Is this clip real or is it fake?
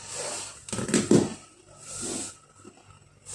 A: real